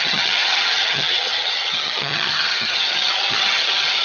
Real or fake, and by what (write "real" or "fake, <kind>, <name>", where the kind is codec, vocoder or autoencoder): fake, vocoder, HiFi-GAN